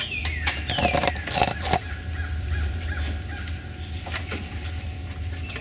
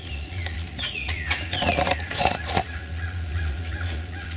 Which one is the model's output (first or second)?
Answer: second